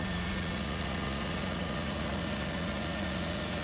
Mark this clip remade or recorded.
remade